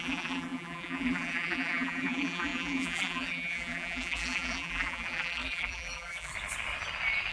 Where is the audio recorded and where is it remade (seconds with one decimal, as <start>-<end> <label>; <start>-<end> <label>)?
0.0-6.3 remade; 6.3-7.3 recorded